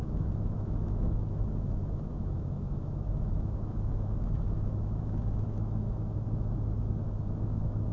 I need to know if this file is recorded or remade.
remade